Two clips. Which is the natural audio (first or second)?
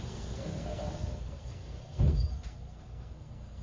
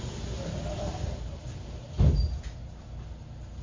second